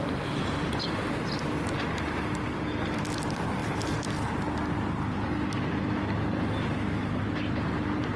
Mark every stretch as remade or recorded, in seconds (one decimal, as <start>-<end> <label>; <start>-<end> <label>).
0.0-8.2 recorded